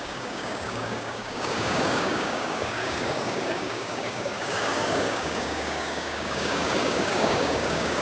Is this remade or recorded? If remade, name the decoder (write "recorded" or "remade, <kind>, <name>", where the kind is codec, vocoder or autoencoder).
remade, codec, DAC